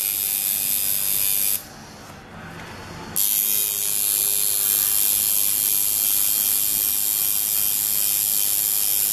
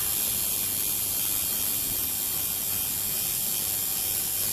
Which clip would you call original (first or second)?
first